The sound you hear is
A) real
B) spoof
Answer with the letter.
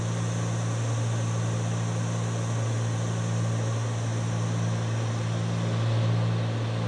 A